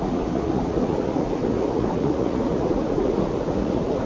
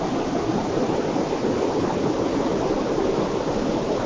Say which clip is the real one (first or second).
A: second